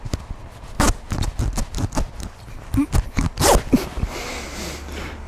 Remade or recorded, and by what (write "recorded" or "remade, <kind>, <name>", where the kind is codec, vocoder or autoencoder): recorded